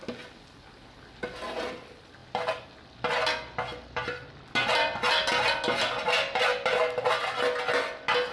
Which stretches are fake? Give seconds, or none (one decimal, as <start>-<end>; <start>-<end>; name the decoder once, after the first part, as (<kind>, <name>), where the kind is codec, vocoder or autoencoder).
none